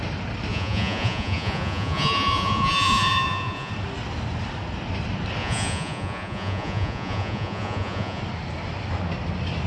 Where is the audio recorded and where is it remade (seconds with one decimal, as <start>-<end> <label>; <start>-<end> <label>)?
0.0-0.5 recorded; 0.5-3.7 remade; 3.7-5.4 recorded; 5.4-8.2 remade; 8.2-9.7 recorded